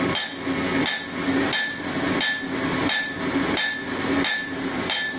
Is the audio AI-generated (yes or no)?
no